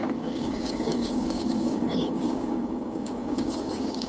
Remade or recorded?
remade